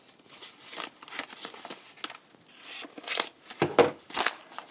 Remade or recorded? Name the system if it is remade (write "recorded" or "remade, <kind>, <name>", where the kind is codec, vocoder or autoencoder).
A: recorded